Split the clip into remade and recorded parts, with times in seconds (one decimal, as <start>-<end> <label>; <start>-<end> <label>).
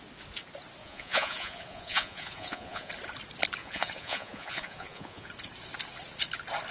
0.0-0.8 recorded; 0.8-2.9 remade; 2.9-3.6 recorded; 3.6-5.3 remade; 5.3-6.7 recorded